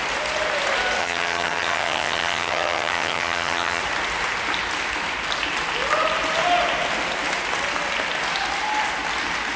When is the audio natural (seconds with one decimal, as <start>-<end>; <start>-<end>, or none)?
0.0-1.0; 3.8-9.6